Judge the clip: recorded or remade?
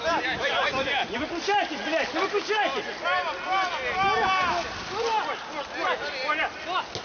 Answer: recorded